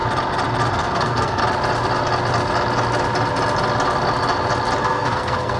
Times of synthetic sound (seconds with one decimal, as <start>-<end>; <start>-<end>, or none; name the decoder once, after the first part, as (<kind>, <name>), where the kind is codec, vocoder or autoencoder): 0.7-1.4 (codec, SNAC); 4.8-5.6